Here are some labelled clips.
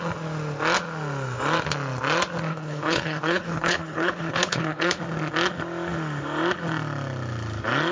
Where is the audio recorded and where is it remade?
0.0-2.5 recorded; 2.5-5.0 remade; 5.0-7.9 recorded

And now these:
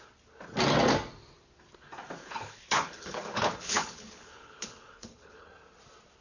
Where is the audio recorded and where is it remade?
0.0-2.2 recorded; 2.2-5.5 remade; 5.5-6.2 recorded

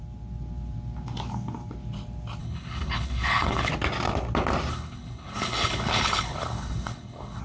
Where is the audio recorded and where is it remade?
0.0-2.4 recorded; 2.4-3.7 remade; 3.7-4.7 recorded; 4.7-7.4 remade

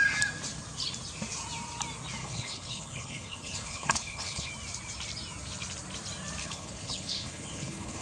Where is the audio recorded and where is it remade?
0.0-2.2 recorded; 2.2-4.5 remade; 4.5-6.4 recorded; 6.4-8.0 remade

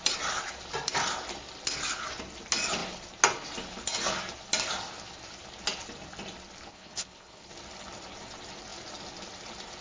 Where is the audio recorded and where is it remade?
0.0-6.7 recorded; 6.7-7.5 remade; 7.5-9.8 recorded

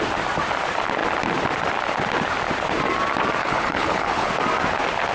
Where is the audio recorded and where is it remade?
0.0-3.4 recorded; 3.4-4.3 remade; 4.3-5.1 recorded

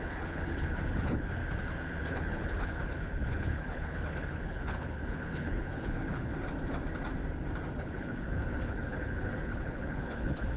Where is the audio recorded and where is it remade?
0.0-1.4 remade; 1.4-2.0 recorded; 2.0-6.3 remade; 6.3-7.8 recorded; 7.8-10.6 remade

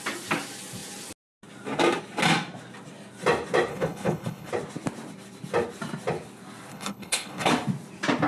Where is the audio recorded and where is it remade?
0.0-3.7 recorded; 3.7-4.5 remade; 4.5-6.7 recorded; 6.7-7.5 remade; 7.5-8.3 recorded